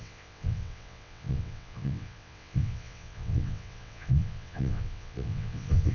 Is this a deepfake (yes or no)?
yes